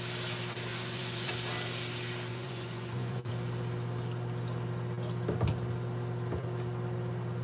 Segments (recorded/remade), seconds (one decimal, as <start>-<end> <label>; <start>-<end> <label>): 0.0-0.7 recorded; 0.7-1.3 remade; 1.3-2.3 recorded; 2.3-3.3 remade; 3.3-7.4 recorded